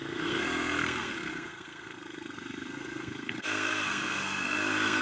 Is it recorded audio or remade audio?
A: remade